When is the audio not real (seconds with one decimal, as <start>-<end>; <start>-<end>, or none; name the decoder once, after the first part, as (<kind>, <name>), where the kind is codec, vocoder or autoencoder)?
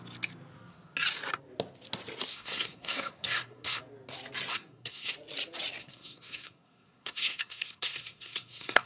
2.3-3.8 (codec, SNAC); 4.5-5.1; 5.8-8.9